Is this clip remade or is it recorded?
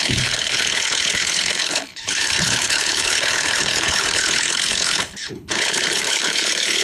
remade